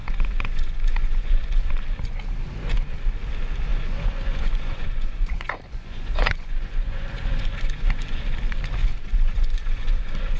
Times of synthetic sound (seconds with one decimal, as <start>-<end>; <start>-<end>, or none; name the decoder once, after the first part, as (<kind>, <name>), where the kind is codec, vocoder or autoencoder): 0.0-1.7 (vocoder, Vocos); 3.7-8.2; 8.8-10.4